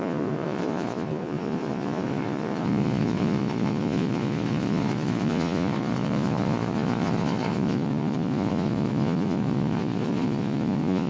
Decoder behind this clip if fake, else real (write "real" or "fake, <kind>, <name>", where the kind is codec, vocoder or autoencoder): fake, vocoder, Vocos